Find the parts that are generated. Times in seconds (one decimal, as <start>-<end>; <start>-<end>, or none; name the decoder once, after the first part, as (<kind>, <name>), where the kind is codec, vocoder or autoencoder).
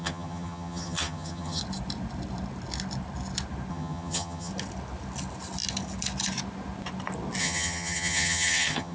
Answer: 0.0-1.6 (vocoder, HiFi-GAN); 3.7-4.5; 7.4-8.9